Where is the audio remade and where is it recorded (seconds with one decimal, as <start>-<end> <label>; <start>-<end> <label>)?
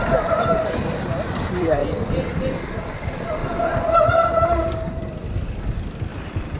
0.0-1.8 remade; 1.8-2.8 recorded; 2.8-3.4 remade; 3.4-4.9 recorded; 4.9-6.1 remade; 6.1-6.6 recorded